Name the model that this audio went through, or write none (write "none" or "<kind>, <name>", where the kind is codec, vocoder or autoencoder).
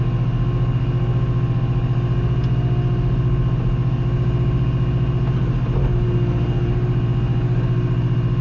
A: none